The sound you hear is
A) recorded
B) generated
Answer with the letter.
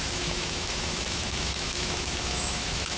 B